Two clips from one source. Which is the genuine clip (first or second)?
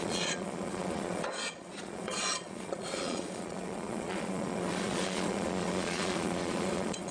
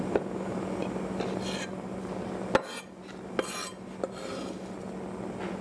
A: second